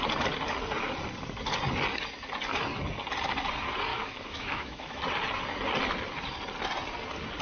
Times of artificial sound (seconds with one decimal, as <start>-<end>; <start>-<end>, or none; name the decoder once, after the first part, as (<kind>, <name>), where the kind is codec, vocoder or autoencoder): 3.9-5.0 (autoencoder, DAC-VAE)